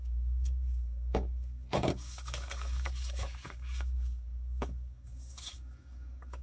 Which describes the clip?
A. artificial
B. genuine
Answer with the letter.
A